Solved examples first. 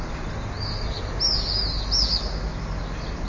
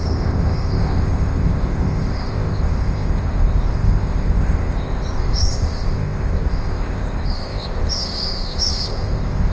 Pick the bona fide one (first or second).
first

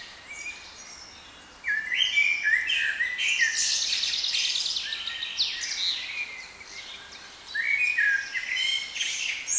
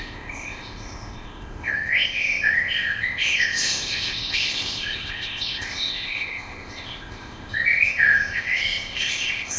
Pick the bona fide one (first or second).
first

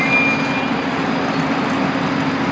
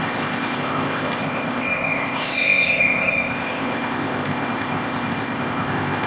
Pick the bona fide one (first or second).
first